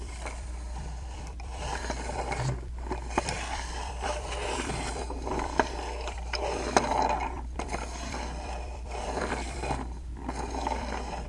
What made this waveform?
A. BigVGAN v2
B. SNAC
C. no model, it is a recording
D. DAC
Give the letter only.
A